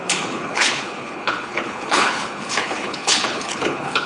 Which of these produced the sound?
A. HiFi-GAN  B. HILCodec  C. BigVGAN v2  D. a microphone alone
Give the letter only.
B